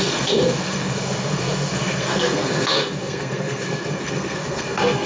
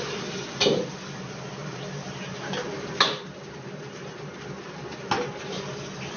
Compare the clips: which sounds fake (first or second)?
first